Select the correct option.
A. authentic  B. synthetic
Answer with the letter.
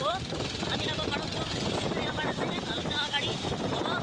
A